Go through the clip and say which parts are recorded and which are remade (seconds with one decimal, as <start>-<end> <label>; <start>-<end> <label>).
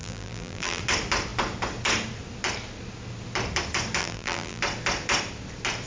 0.0-0.8 remade; 0.8-4.0 recorded; 4.0-4.6 remade; 4.6-5.9 recorded